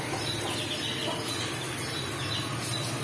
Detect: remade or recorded remade